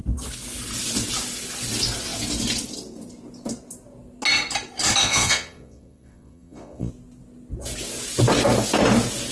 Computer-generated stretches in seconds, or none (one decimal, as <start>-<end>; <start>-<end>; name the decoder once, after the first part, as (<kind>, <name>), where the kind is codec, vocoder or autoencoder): 5.0-6.9 (vocoder, Vocos)